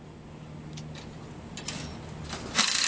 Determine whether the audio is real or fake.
real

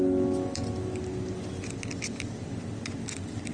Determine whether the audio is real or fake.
real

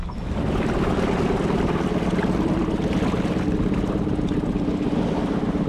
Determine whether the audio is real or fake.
real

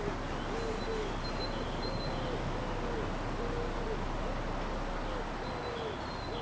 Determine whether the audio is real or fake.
real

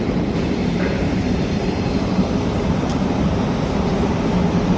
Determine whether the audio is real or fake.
fake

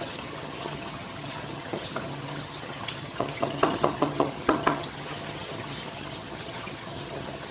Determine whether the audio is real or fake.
fake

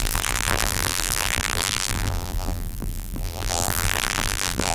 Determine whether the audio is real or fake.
fake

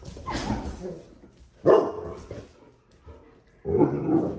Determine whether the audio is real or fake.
real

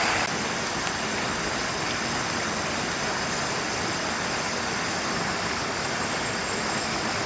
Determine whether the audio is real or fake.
real